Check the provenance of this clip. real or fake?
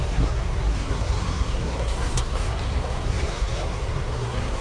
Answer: fake